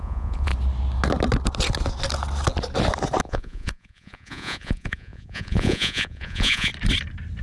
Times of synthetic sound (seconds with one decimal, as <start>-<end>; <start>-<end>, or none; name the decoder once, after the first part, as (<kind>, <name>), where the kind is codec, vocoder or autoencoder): 0.0-0.5 (vocoder, Vocos); 3.2-6.7